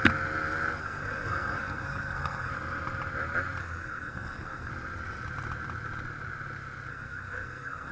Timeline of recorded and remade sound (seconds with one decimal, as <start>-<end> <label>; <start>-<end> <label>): 0.0-0.8 recorded; 0.8-2.5 remade; 2.5-3.6 recorded; 3.6-4.7 remade; 4.7-6.9 recorded; 6.9-7.9 remade